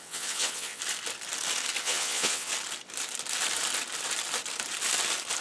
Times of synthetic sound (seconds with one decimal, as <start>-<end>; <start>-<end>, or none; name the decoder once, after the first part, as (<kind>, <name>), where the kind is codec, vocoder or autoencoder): 0.0-0.8 (vocoder, WaveNeXt); 1.8-2.5